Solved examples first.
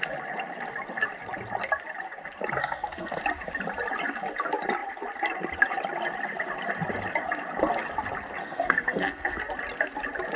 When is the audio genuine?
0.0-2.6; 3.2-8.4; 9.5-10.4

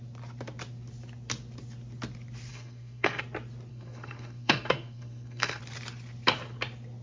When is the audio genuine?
0.0-2.5; 3.2-3.7; 5.6-7.0

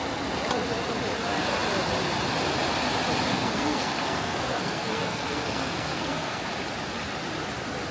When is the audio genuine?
0.0-3.3; 6.5-7.9

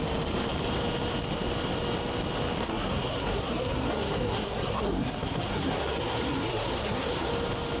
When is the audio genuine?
0.0-2.6; 7.3-7.8

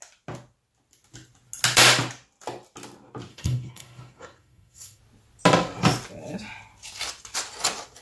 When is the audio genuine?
0.0-3.3; 5.0-8.0

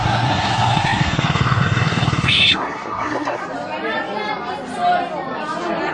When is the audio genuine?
3.4-5.9

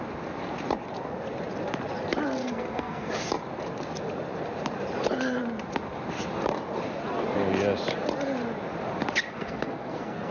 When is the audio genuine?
0.0-2.4; 3.1-9.3